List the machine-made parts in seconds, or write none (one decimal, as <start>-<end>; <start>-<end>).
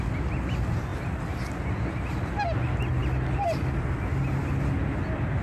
none